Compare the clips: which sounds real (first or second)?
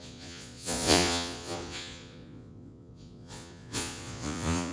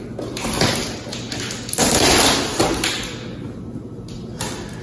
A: second